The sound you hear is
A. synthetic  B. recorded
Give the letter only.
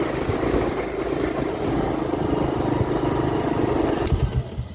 B